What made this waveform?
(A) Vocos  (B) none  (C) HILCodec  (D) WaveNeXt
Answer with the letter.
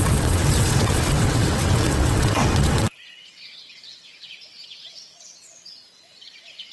D